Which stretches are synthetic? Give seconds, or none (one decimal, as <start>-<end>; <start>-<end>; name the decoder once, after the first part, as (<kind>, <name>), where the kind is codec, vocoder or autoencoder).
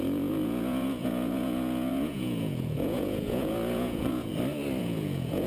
0.0-4.3 (vocoder, Vocos); 4.8-5.5